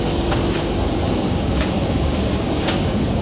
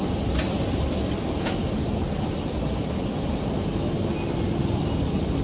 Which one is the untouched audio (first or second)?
second